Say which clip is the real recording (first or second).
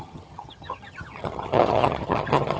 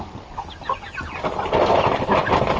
second